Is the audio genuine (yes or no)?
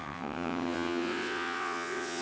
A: no